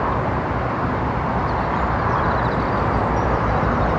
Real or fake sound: real